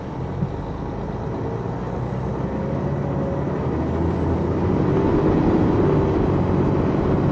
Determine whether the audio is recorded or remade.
recorded